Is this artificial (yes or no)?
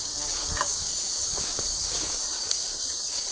yes